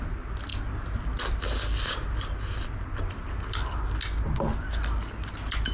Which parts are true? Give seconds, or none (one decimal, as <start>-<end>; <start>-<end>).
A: 0.0-5.7